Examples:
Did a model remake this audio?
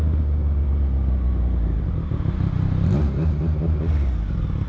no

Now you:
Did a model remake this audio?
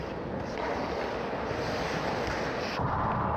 no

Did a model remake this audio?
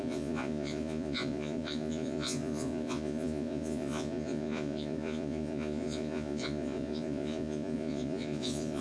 yes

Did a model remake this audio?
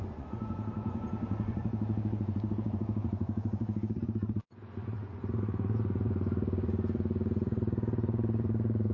yes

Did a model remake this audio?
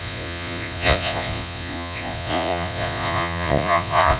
yes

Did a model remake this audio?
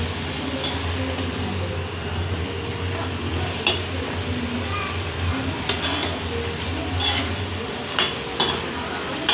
no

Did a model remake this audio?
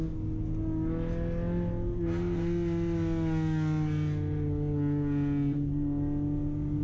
no